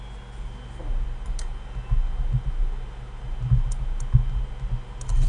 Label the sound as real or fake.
real